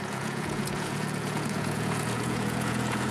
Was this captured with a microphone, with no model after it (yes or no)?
no